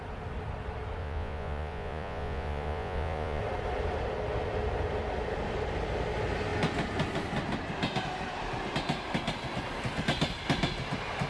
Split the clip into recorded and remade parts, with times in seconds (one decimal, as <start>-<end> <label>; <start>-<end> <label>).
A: 0.0-1.0 recorded; 1.0-3.4 remade; 3.4-11.3 recorded